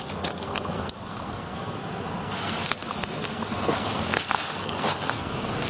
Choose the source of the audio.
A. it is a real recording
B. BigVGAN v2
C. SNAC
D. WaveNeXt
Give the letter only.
C